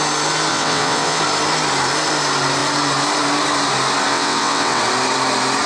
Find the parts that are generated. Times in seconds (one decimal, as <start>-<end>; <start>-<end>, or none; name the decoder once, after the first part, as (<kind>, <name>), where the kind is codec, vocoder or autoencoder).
0.5-1.2 (vocoder, WaveNeXt); 4.1-4.8